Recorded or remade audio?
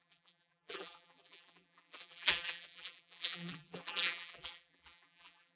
remade